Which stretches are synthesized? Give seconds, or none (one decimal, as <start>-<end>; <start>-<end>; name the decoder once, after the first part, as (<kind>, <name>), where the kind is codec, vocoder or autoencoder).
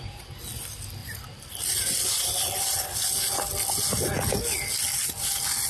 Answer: 1.0-4.4 (vocoder, BigVGAN v2)